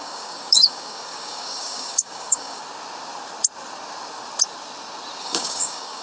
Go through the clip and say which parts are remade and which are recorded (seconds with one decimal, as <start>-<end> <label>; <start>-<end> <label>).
0.0-2.6 remade; 2.6-5.2 recorded; 5.2-6.0 remade